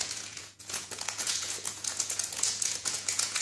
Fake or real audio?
fake